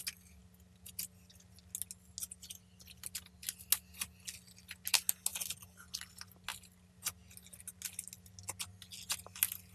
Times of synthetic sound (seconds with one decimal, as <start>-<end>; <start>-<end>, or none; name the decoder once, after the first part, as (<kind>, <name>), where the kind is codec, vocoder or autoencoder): none